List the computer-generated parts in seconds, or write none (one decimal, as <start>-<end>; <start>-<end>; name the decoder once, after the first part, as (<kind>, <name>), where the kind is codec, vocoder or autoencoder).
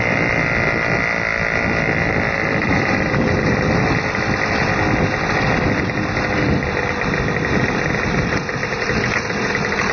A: none